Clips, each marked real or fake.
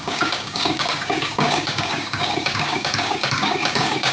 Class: fake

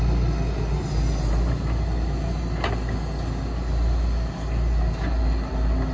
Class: real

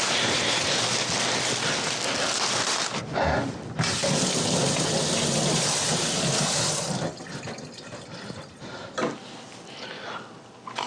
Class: real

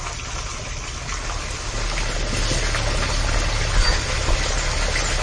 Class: real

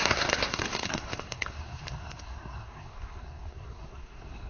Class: fake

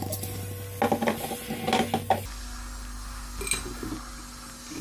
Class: real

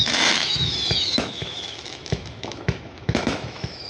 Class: fake